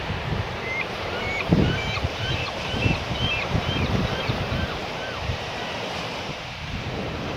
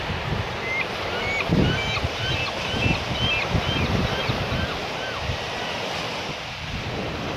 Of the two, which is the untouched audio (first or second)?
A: second